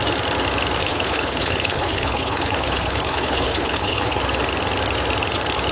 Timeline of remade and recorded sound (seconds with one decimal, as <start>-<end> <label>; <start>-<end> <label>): 0.0-0.8 recorded; 0.8-4.2 remade; 4.2-5.7 recorded